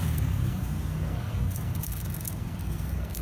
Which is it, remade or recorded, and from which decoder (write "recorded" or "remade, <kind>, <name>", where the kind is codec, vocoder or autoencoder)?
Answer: remade, codec, SNAC